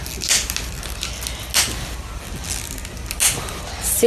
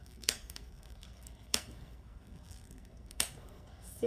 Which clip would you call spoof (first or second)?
second